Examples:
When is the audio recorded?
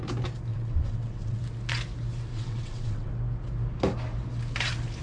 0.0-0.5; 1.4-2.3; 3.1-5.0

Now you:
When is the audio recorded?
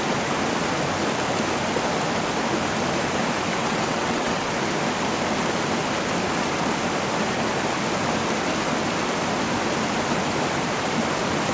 0.0-3.6; 4.5-11.5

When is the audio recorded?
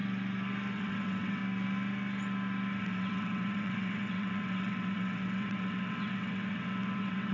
0.0-0.7; 1.4-2.8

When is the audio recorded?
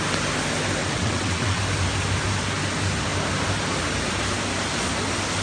0.0-0.8; 1.6-5.4